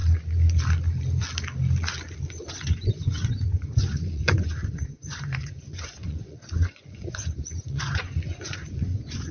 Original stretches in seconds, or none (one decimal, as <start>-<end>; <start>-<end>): 0.0-2.5